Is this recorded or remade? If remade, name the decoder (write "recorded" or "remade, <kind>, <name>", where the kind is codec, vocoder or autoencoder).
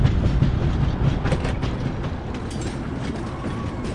recorded